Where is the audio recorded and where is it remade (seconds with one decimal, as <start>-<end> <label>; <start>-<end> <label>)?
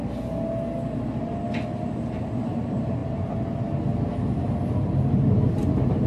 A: 0.0-6.1 recorded